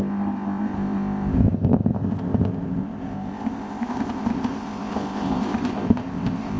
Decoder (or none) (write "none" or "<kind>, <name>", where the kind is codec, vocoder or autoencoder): codec, ZipCodec